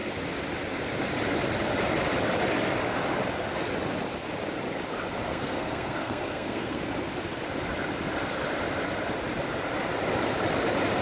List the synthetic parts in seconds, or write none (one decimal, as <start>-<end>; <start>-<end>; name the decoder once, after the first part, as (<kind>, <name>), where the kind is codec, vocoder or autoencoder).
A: 5.3-6.8 (codec, SNAC)